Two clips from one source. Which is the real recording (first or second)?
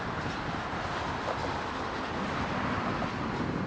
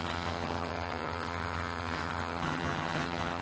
first